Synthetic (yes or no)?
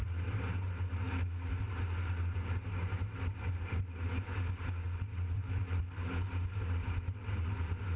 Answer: no